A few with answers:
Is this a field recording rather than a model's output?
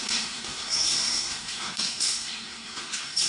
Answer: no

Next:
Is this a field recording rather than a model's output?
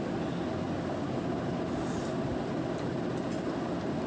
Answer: yes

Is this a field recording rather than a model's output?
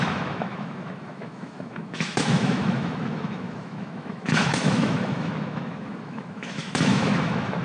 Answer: no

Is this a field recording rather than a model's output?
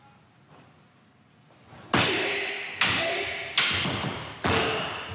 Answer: yes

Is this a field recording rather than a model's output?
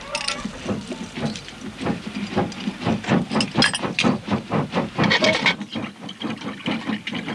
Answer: yes